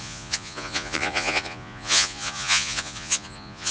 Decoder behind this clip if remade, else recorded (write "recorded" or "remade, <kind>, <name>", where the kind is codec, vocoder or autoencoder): remade, vocoder, Vocos